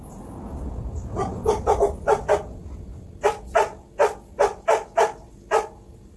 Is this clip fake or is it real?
real